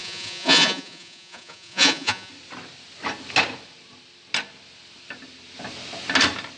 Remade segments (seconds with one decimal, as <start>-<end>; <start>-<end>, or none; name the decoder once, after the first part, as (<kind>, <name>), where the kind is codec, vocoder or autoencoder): 0.0-2.3 (vocoder, Vocos)